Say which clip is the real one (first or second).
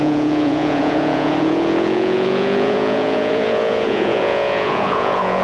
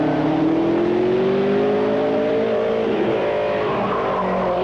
second